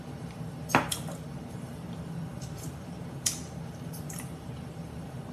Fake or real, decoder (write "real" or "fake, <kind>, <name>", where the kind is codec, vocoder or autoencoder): fake, vocoder, BigVGAN v2